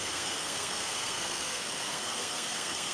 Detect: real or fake fake